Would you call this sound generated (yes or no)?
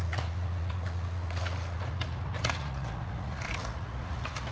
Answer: yes